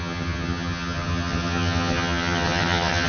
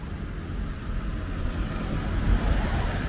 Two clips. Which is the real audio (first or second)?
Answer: second